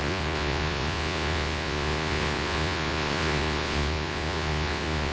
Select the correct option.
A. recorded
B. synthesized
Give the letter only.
B